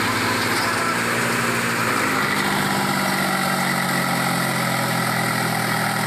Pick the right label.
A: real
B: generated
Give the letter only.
A